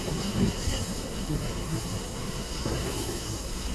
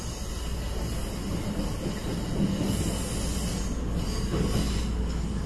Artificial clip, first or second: first